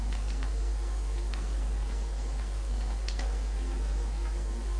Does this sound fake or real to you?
fake